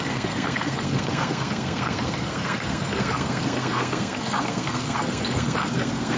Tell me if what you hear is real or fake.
fake